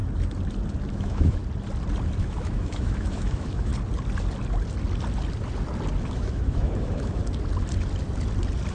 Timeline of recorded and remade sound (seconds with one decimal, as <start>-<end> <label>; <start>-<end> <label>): 0.0-0.9 recorded; 0.9-1.4 remade; 1.4-2.2 recorded; 2.2-3.7 remade; 3.7-6.1 recorded; 6.1-7.2 remade; 7.2-8.7 recorded